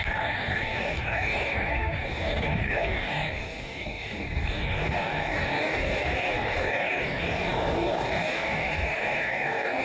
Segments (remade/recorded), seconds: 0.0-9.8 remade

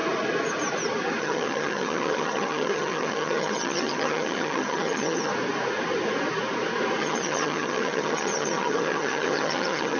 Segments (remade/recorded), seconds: 0.0-1.2 recorded; 1.2-5.3 remade; 5.3-7.0 recorded; 7.0-10.0 remade

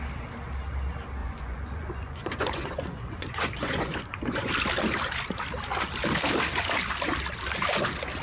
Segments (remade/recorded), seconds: 0.0-1.2 recorded; 1.2-4.5 remade; 4.5-8.2 recorded

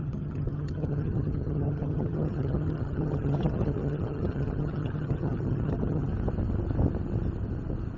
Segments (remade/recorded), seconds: 0.0-6.1 remade; 6.1-8.0 recorded

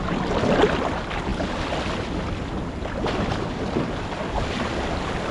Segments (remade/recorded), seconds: 0.0-1.3 recorded; 1.3-4.5 remade; 4.5-5.3 recorded

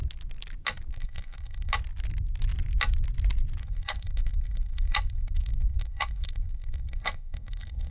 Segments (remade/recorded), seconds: 0.0-0.9 recorded; 0.9-1.7 remade; 1.7-3.6 recorded; 3.6-7.9 remade

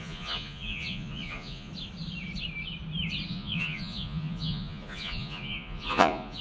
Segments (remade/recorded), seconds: 0.0-1.7 remade; 1.7-3.3 recorded; 3.3-6.4 remade